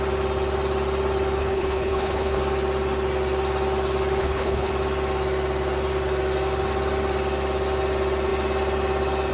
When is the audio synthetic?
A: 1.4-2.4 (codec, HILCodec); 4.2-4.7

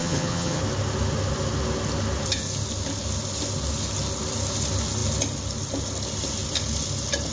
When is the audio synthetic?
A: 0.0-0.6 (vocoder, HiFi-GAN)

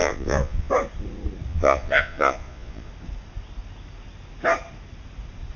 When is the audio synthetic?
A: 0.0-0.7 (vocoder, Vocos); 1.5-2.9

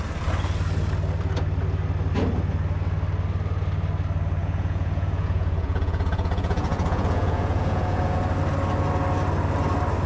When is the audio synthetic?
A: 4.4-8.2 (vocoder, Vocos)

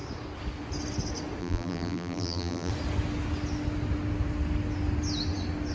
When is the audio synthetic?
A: 1.4-2.7 (vocoder, BigVGAN v2)

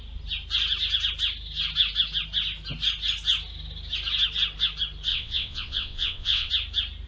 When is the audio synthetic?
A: 5.1-6.5 (vocoder, WaveNeXt)

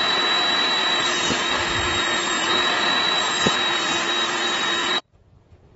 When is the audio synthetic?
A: 0.8-3.5 (vocoder, Vocos); 4.8-5.8